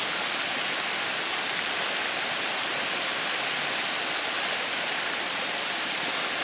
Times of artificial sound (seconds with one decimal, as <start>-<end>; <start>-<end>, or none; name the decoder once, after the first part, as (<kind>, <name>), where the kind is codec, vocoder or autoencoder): none